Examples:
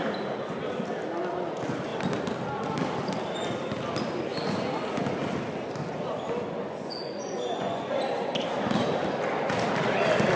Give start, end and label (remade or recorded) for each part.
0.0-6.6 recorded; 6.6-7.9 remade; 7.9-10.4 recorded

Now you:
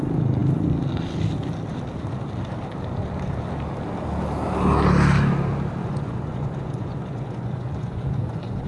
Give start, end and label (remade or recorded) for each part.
0.0-5.8 recorded; 5.8-8.7 remade

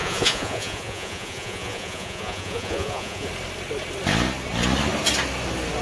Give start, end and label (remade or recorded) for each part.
0.0-3.3 remade; 3.3-5.8 recorded

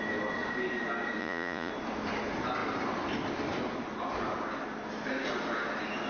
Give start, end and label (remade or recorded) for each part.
0.0-1.2 recorded; 1.2-1.7 remade; 1.7-6.1 recorded

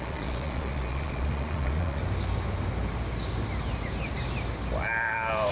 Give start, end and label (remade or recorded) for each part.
0.0-2.0 remade; 2.0-5.5 recorded

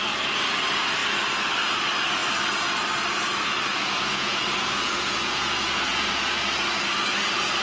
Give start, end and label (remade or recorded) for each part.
0.0-3.7 recorded; 3.7-6.4 remade; 6.4-7.6 recorded

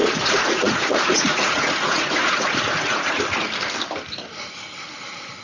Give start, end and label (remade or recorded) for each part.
0.0-3.2 remade; 3.2-5.4 recorded

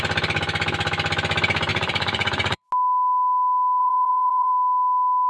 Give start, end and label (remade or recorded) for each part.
0.0-1.7 recorded; 1.7-2.7 remade; 2.7-3.8 recorded; 3.8-4.5 remade; 4.5-5.3 recorded